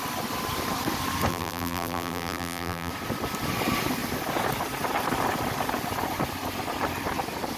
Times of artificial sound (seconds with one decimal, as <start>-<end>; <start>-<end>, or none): 1.3-2.9